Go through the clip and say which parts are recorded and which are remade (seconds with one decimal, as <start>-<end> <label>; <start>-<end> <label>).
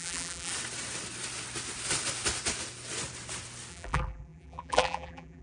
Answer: 0.0-0.5 remade; 0.5-3.7 recorded; 3.7-5.4 remade